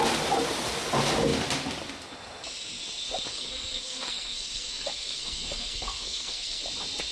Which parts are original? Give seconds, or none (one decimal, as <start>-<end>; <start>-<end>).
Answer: 0.0-3.3; 6.6-7.1